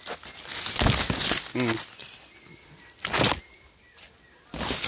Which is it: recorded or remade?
recorded